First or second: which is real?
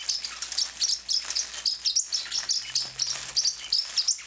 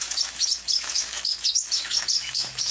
first